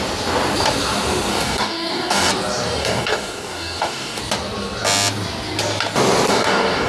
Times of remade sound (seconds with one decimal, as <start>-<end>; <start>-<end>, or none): 1.3-2.3; 2.8-4.2; 6.3-6.9